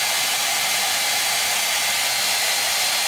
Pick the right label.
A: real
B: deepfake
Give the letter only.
A